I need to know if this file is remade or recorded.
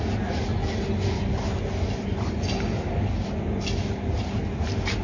recorded